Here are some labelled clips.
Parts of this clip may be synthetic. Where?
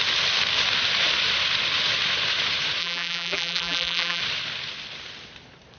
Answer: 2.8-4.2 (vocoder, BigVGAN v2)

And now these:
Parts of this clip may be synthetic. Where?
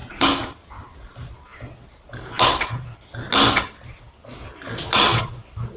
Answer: none